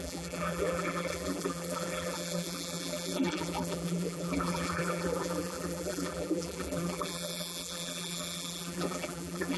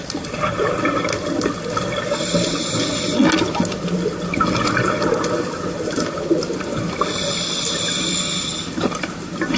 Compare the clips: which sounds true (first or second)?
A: second